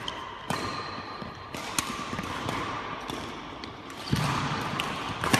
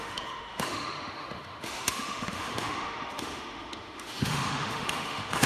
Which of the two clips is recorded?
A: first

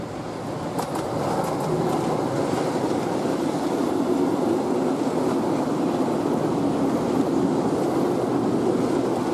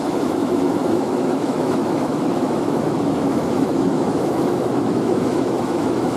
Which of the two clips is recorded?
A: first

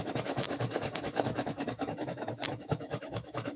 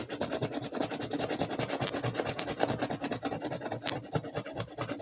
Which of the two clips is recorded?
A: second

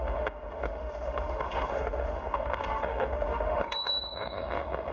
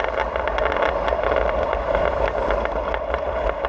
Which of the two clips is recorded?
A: second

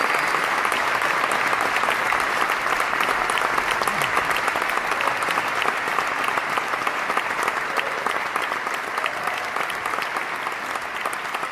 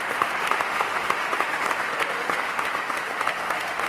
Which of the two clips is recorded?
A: first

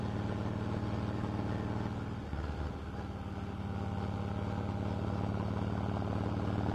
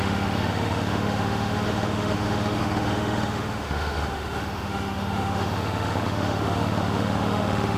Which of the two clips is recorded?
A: first